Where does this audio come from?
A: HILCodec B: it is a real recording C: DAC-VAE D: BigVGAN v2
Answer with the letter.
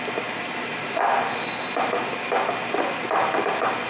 B